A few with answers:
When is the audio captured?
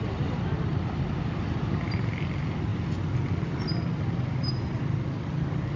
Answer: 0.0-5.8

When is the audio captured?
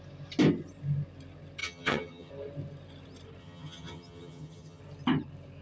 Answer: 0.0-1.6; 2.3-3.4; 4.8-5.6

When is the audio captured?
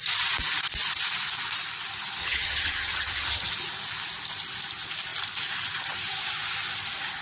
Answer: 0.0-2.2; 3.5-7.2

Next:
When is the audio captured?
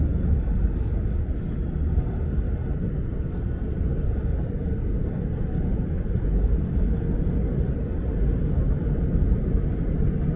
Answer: 0.0-10.4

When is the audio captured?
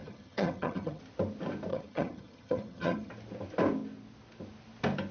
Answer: 1.0-1.7; 3.1-5.1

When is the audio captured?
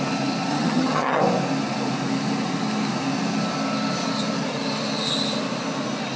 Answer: 0.0-0.5; 1.2-6.2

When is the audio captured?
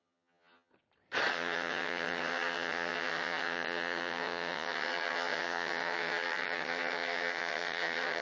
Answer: 0.7-1.3